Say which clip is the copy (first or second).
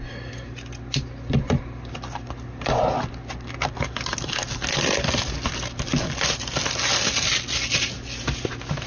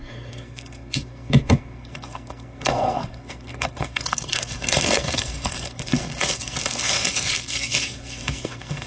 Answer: second